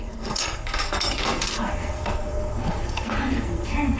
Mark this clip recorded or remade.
remade